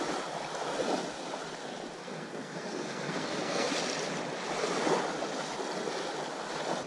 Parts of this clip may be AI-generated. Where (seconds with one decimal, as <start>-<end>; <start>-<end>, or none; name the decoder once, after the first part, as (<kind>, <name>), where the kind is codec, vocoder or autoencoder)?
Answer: 2.0-3.7 (codec, SNAC)